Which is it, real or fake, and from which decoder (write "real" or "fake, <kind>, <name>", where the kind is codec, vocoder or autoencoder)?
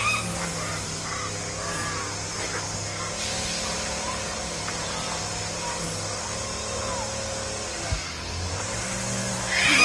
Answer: real